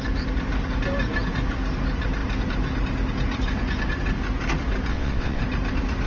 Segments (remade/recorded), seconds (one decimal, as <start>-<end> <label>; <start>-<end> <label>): 0.0-4.9 recorded; 4.9-5.4 remade; 5.4-6.1 recorded